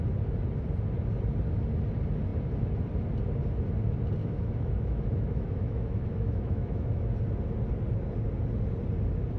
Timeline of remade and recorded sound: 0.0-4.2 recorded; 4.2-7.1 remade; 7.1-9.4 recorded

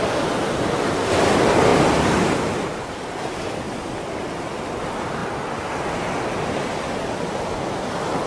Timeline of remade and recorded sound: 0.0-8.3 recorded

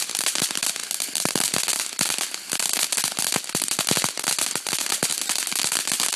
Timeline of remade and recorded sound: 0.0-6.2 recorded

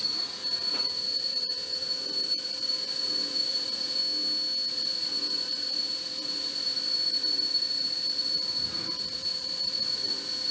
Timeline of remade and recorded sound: 0.0-4.0 remade; 4.0-4.7 recorded; 4.7-10.5 remade

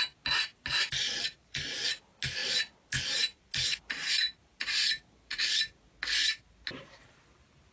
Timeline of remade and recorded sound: 0.0-0.8 recorded; 0.8-1.6 remade; 1.6-7.7 recorded